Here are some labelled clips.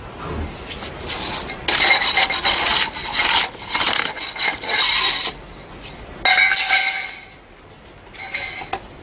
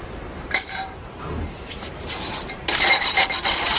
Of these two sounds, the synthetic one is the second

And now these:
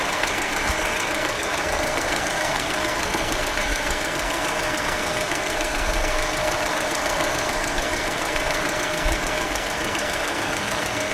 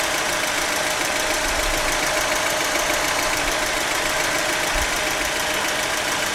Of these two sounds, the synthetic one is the first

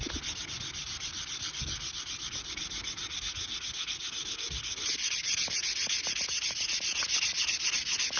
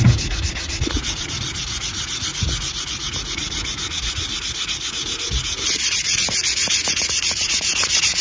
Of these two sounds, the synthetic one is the second